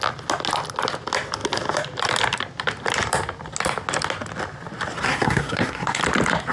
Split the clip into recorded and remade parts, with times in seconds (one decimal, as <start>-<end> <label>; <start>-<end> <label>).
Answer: 0.0-5.1 recorded; 5.1-6.0 remade; 6.0-6.5 recorded